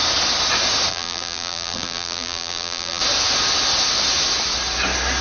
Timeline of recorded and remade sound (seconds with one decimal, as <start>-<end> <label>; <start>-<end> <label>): 0.0-0.9 recorded; 0.9-3.0 remade; 3.0-5.2 recorded